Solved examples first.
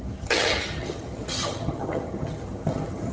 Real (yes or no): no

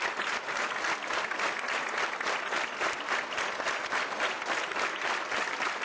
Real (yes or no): yes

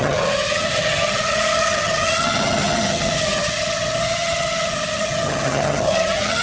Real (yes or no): no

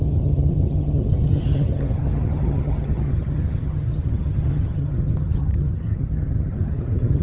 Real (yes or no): no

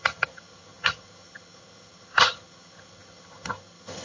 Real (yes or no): no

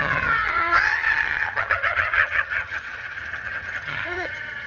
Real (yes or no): no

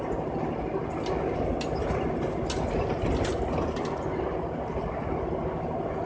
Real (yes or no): yes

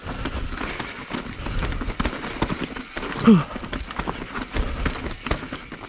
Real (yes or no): yes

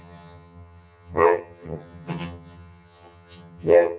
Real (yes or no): no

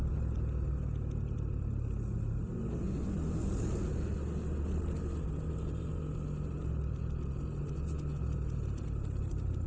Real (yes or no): yes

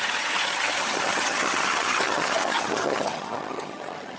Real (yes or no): no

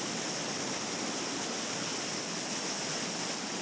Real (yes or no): yes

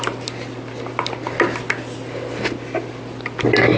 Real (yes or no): yes